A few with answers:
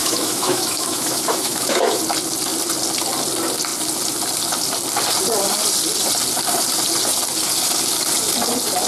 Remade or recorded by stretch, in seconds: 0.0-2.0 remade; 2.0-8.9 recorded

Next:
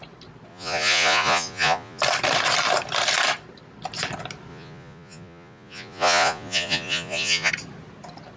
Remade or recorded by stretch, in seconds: 0.0-0.5 recorded; 0.5-2.0 remade; 2.0-4.5 recorded; 4.5-7.5 remade; 7.5-8.4 recorded

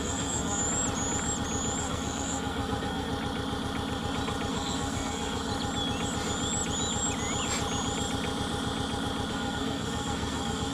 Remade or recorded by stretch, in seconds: 0.0-0.6 remade; 0.6-1.8 recorded; 1.8-3.1 remade; 3.1-4.5 recorded; 4.5-5.5 remade; 5.5-9.3 recorded; 9.3-10.7 remade